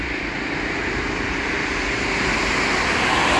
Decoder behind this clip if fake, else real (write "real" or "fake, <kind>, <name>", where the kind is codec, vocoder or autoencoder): real